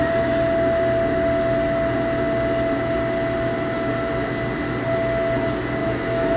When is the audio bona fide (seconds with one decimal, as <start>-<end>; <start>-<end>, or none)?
0.0-5.8